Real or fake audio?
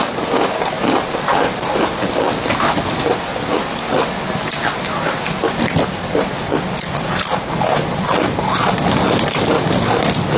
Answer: real